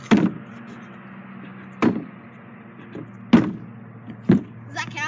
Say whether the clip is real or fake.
real